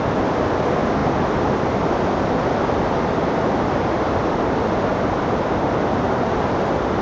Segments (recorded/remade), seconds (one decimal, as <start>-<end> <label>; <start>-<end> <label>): 0.0-7.0 recorded